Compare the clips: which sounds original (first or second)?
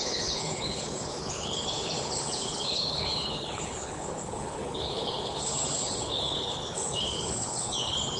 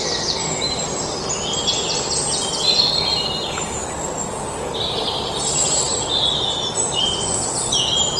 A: second